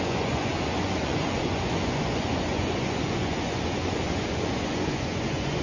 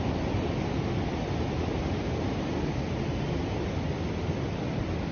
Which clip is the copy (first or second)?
first